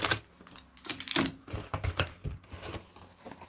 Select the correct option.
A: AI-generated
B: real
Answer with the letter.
B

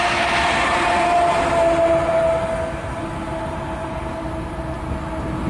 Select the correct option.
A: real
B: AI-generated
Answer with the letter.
A